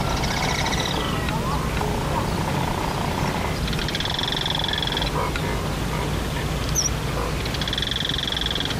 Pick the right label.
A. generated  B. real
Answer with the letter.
B